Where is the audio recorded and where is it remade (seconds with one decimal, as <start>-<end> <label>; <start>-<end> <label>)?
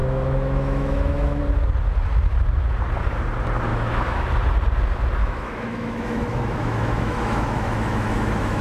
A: 0.0-1.4 remade; 1.4-3.7 recorded; 3.7-4.3 remade; 4.3-5.2 recorded; 5.2-8.6 remade